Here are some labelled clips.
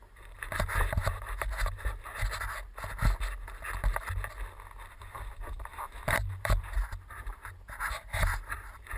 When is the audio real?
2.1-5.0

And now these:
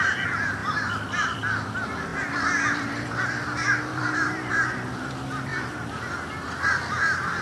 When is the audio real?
0.0-0.6; 1.7-2.1; 4.9-7.4

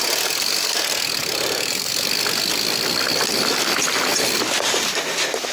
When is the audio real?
0.0-1.2; 1.9-5.5

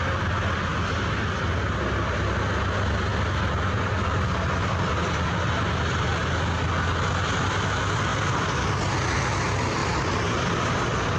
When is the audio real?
0.0-8.1; 8.7-9.8

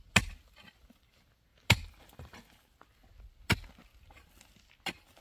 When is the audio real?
0.0-5.2

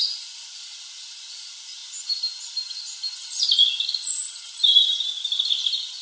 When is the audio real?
0.0-6.0

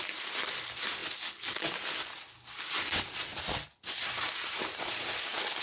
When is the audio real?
1.0-2.7; 3.3-3.9